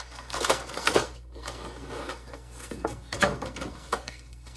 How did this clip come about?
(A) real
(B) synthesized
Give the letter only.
B